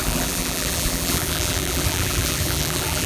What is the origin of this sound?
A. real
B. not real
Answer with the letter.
B